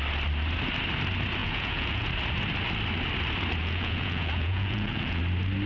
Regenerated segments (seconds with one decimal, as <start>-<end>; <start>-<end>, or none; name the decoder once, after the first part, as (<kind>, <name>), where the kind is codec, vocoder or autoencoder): 1.4-2.1 (vocoder, Vocos); 3.6-5.2